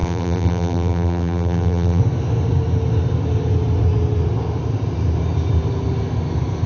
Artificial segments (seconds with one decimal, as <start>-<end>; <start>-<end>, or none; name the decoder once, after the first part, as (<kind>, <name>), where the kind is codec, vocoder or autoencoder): 0.0-2.0 (vocoder, BigVGAN v2)

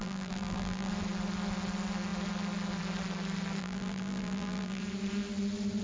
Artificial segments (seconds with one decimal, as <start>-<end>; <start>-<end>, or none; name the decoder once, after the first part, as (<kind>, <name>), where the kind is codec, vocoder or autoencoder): 0.0-0.9 (vocoder, BigVGAN v2); 3.6-4.8

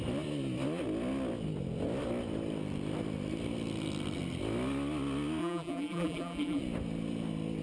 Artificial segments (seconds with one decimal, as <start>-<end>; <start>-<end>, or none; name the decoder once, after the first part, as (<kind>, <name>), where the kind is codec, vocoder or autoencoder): 5.4-6.6 (vocoder, BigVGAN v2)

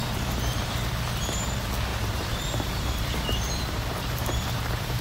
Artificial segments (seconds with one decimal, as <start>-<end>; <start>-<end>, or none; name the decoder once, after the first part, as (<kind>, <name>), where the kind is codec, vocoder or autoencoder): 0.0-0.9 (vocoder, BigVGAN v2); 1.9-5.0

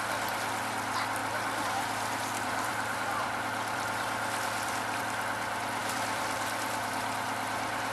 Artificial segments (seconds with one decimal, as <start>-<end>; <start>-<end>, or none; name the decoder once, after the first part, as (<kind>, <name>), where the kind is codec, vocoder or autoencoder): 1.2-5.0 (vocoder, BigVGAN v2); 5.8-6.9